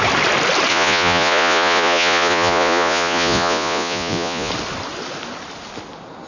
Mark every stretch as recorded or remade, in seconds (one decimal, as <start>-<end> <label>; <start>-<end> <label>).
0.0-0.7 recorded; 0.7-4.5 remade; 4.5-6.3 recorded